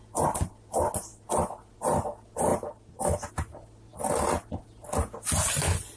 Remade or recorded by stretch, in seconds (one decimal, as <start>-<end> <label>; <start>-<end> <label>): 0.0-6.0 recorded